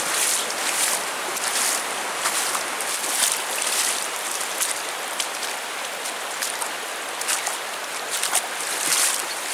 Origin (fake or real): fake